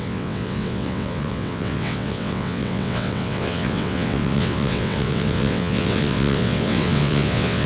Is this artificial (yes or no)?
yes